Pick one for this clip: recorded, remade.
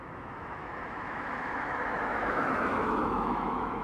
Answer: remade